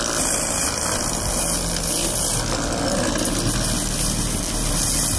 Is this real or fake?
real